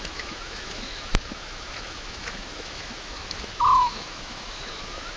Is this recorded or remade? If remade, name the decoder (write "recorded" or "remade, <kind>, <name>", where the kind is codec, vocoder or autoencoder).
remade, autoencoder, DAC-VAE